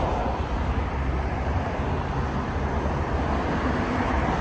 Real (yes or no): yes